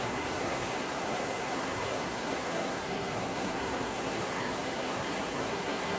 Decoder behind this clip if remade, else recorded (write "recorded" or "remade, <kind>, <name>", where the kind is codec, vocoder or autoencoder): remade, codec, SNAC